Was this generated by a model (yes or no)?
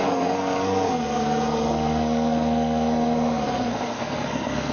yes